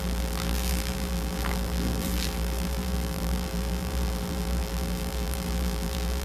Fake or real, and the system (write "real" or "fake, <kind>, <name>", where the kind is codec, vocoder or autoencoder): fake, vocoder, BigVGAN v2